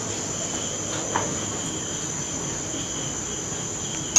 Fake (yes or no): no